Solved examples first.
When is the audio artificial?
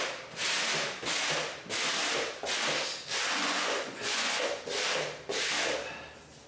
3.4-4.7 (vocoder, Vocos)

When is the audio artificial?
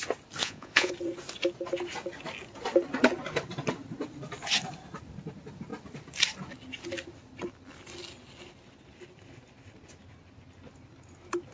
0.4-0.9 (vocoder, Vocos)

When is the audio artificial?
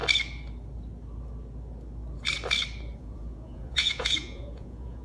3.0-5.0 (vocoder, Vocos)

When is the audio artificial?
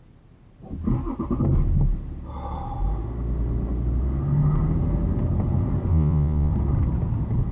5.9-6.5 (vocoder, Vocos)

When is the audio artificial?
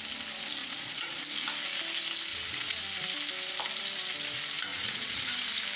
0.6-1.2 (vocoder, Vocos); 2.3-2.8; 4.7-5.3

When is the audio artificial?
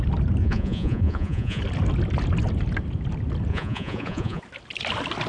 0.4-1.6 (vocoder, Vocos); 3.5-4.4